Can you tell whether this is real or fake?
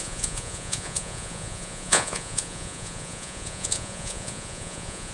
fake